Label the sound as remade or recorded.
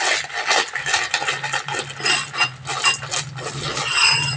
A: recorded